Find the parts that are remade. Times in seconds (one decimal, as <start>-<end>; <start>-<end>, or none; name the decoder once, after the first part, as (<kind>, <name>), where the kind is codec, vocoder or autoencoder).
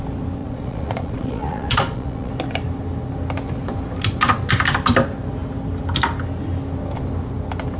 0.4-2.3 (vocoder, Vocos)